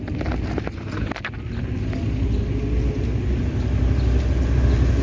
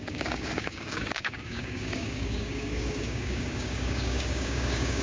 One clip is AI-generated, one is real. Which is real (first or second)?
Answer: first